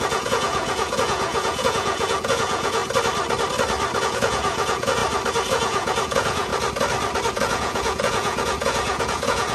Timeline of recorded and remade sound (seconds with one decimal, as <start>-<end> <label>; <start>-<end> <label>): 0.0-2.8 remade; 2.8-4.0 recorded; 4.0-5.0 remade; 5.0-5.5 recorded; 5.5-6.5 remade; 6.5-7.3 recorded; 7.3-9.5 remade